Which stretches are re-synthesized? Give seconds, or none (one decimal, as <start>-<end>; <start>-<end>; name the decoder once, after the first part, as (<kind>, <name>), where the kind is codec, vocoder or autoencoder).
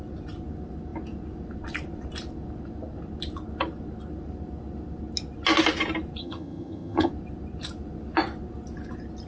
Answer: 6.2-7.1 (vocoder, HiFi-GAN)